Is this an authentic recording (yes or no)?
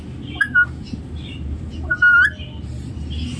yes